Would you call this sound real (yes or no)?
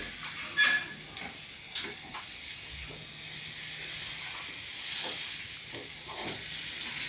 yes